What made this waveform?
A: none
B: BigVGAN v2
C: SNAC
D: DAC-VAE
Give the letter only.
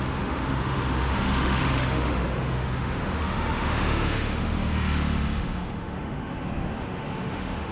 D